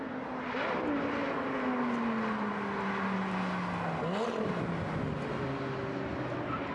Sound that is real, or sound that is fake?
real